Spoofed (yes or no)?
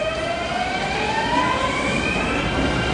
no